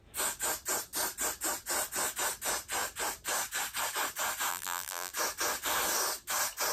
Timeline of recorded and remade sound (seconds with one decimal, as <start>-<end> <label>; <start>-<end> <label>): 0.0-4.5 recorded; 4.5-5.1 remade; 5.1-6.7 recorded